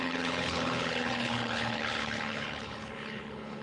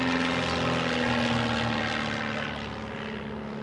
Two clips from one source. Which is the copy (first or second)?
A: first